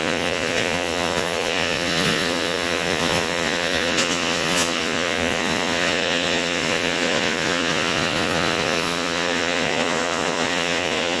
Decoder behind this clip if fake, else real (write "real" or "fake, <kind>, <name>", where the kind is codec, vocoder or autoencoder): fake, vocoder, Vocos